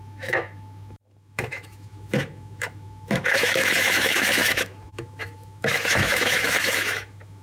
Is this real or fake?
fake